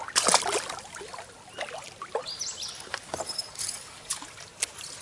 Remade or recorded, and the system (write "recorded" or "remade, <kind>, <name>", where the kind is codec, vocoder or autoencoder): recorded